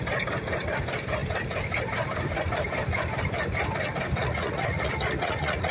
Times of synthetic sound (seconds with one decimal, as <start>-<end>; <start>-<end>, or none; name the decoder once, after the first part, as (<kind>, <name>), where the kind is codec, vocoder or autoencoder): 4.2-5.7 (vocoder, Vocos)